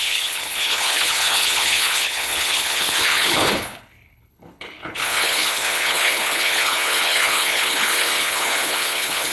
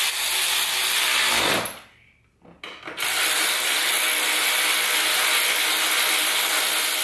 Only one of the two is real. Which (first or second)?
second